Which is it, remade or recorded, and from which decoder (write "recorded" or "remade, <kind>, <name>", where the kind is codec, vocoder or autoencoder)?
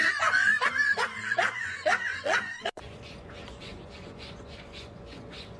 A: remade, vocoder, Vocos